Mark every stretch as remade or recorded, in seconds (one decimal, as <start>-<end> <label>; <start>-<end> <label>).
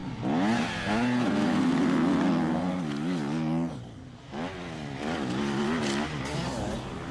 0.0-7.1 recorded